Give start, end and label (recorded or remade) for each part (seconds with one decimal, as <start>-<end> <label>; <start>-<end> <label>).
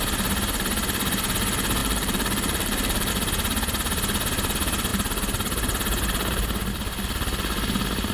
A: 0.0-1.8 recorded; 1.8-3.1 remade; 3.1-8.1 recorded